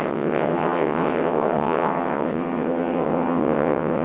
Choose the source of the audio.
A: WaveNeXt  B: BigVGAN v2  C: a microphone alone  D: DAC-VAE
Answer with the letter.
A